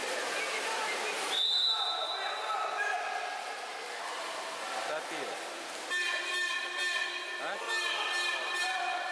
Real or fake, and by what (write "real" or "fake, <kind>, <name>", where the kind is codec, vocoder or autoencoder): real